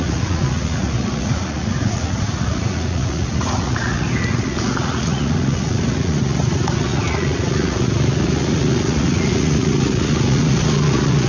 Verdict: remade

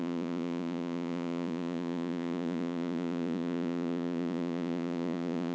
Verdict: remade